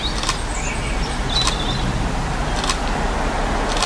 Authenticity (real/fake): real